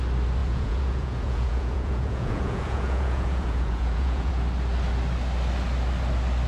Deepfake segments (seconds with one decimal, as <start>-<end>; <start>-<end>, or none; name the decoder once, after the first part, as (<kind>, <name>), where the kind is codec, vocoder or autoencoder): 0.4-4.3 (vocoder, Vocos)